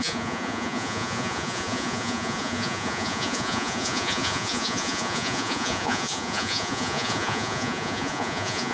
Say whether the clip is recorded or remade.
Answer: remade